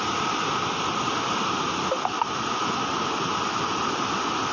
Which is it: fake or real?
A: real